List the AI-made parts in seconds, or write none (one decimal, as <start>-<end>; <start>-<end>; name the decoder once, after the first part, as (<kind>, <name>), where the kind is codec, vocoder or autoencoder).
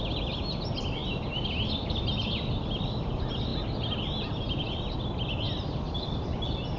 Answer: none